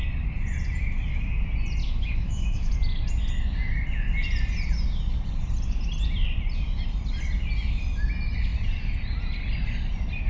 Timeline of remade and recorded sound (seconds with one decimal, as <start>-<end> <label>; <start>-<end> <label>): 0.0-1.8 recorded; 1.8-2.7 remade; 2.7-10.3 recorded